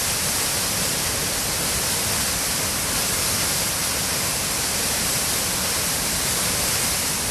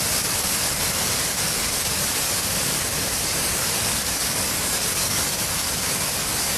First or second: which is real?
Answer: first